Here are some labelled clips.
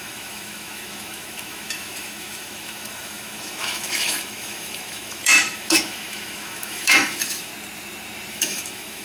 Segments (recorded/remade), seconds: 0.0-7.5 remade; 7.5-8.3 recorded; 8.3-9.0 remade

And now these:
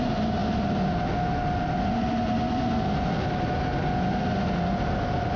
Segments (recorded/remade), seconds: 0.0-5.4 recorded

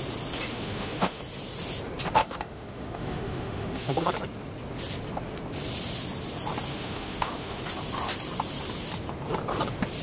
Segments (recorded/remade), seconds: 0.0-0.5 recorded; 0.5-1.2 remade; 1.2-2.2 recorded; 2.2-4.1 remade; 4.1-6.7 recorded; 6.7-7.6 remade; 7.6-10.0 recorded

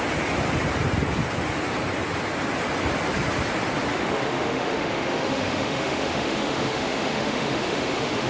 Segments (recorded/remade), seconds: 0.0-3.9 recorded; 3.9-8.3 remade

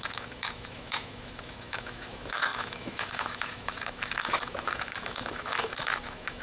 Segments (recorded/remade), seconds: 0.0-6.4 remade

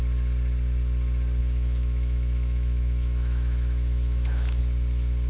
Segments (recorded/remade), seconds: 0.0-1.4 recorded; 1.4-4.6 remade; 4.6-5.3 recorded

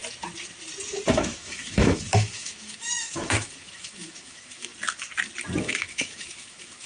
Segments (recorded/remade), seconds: 0.0-1.1 recorded; 1.1-4.7 remade; 4.7-5.6 recorded; 5.6-6.9 remade